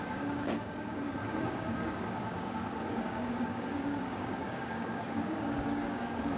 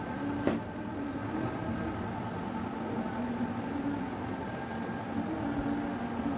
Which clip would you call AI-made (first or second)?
first